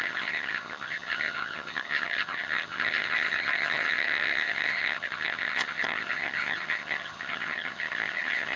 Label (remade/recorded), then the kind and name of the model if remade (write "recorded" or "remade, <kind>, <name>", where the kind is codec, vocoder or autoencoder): remade, vocoder, HiFi-GAN